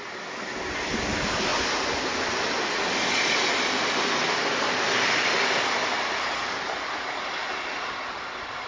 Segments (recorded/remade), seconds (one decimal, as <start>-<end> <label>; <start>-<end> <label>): 0.0-8.7 recorded